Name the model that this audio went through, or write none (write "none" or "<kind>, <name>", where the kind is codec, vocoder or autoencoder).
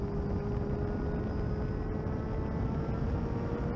none